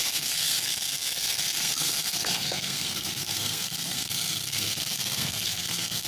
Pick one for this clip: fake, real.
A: fake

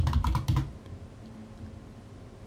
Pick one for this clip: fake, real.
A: real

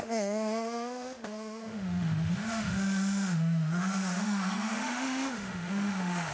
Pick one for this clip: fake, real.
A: fake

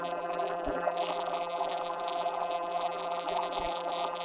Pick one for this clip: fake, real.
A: fake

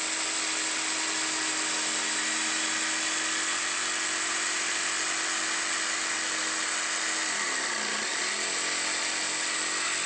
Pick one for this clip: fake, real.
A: real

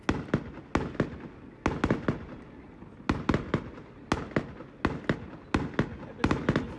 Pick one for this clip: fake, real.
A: real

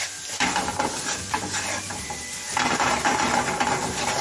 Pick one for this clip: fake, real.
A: real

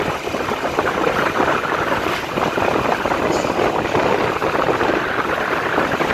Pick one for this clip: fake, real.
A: fake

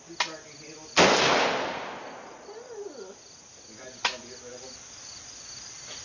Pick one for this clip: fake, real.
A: real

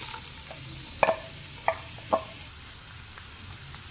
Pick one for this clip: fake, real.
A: real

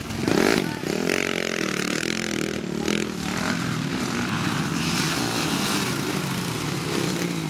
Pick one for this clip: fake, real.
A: real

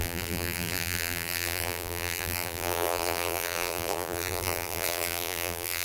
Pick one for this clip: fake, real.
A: fake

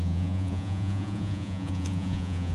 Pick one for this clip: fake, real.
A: fake